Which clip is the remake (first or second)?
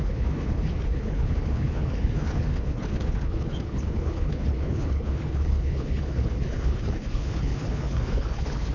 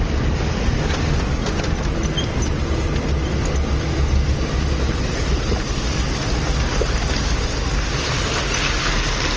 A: first